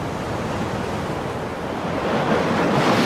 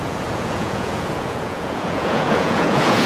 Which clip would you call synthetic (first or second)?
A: second